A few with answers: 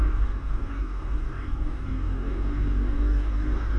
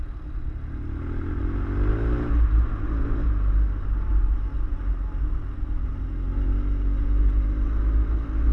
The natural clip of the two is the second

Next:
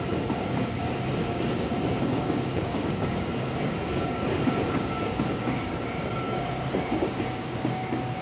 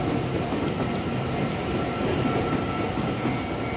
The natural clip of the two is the second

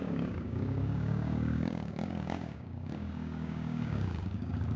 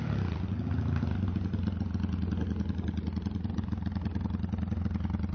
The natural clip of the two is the second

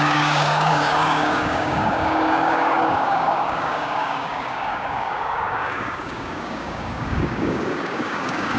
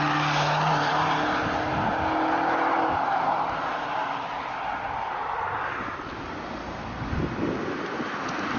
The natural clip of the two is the second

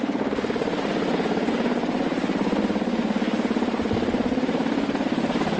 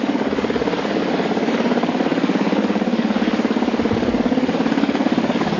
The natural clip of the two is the first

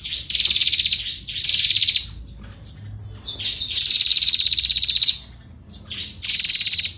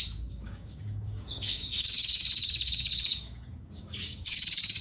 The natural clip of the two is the first